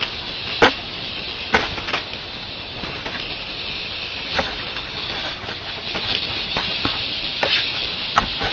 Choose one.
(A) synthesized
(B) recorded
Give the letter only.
B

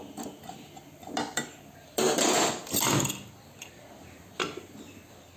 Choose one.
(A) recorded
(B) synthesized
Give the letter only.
A